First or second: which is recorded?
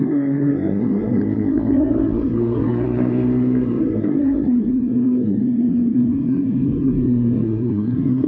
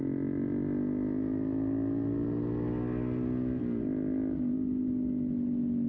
second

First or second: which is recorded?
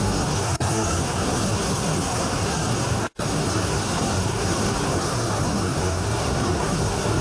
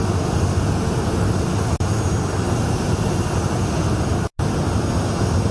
second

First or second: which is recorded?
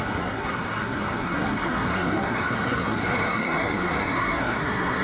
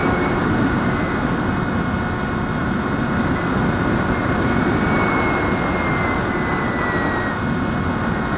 second